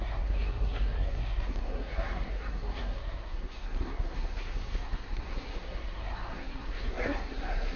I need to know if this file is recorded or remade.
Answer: remade